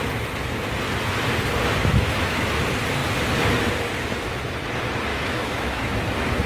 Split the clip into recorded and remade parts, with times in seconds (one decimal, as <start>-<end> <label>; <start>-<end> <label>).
0.0-1.9 recorded; 1.9-2.5 remade; 2.5-5.1 recorded; 5.1-6.1 remade; 6.1-6.5 recorded